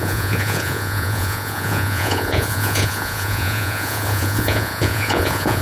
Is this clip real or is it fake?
fake